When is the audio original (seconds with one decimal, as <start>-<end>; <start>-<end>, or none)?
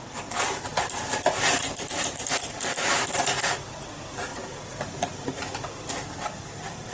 0.0-6.9